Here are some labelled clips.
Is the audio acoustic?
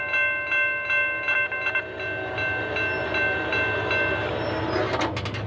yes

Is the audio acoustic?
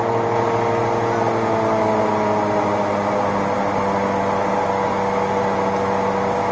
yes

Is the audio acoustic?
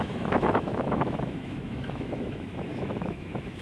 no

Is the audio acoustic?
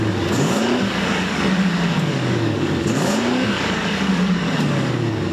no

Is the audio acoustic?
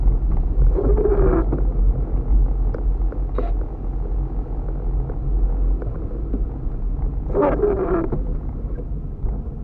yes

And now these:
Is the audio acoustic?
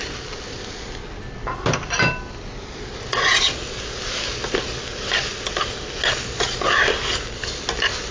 yes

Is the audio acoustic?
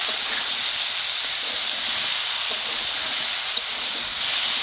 yes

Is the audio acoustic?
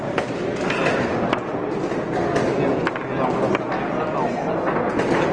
yes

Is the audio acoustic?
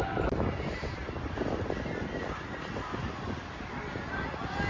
yes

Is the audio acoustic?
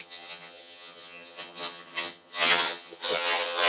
no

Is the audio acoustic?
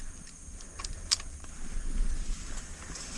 no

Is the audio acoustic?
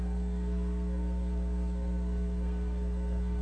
no